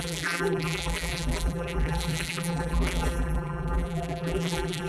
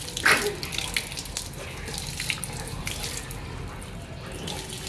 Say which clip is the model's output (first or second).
first